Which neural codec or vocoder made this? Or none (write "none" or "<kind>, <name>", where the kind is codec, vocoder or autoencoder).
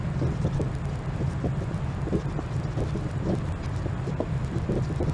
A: none